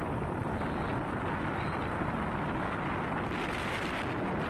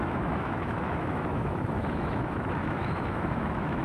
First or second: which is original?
first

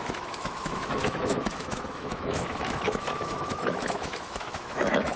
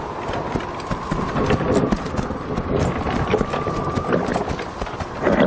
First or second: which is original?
second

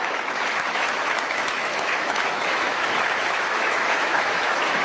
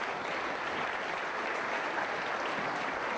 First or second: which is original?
second